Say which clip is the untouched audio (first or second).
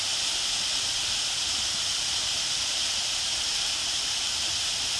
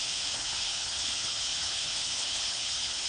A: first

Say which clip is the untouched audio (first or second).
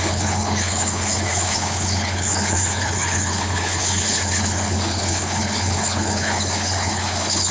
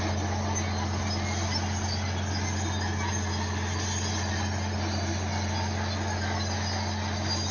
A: second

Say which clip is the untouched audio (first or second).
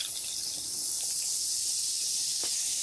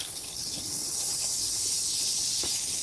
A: first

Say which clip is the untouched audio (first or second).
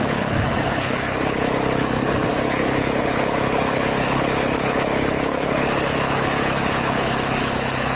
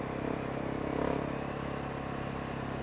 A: second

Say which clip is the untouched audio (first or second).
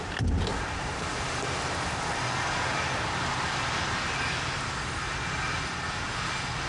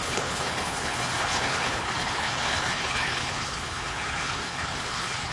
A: first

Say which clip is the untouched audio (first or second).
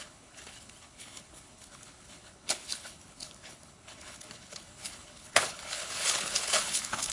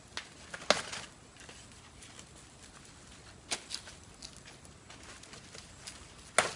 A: second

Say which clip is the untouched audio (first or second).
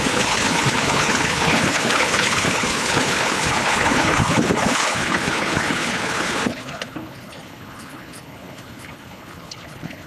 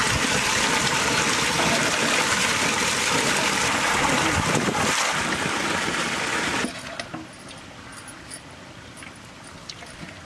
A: second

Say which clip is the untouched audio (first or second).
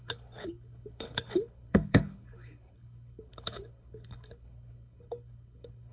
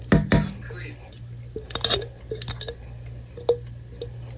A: second